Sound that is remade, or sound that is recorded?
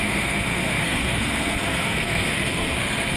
remade